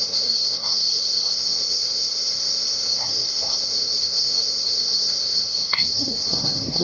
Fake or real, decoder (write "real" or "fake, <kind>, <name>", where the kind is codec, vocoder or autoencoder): fake, codec, SNAC